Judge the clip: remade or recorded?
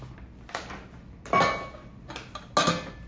recorded